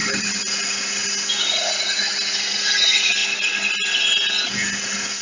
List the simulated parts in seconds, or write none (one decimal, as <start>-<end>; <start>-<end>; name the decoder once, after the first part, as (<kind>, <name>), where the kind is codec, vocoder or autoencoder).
0.0-0.5 (vocoder, Vocos)